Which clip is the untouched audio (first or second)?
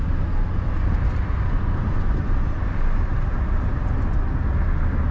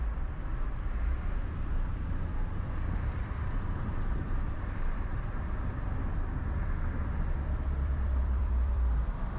first